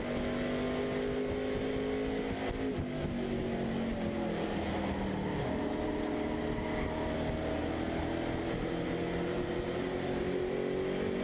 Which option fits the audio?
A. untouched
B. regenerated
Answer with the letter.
A